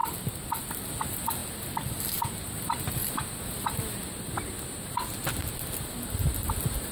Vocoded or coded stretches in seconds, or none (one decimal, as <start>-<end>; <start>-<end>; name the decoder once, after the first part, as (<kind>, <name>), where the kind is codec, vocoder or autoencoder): none